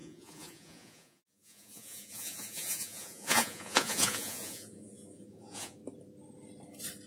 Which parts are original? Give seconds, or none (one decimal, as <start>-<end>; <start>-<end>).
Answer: 5.8-7.1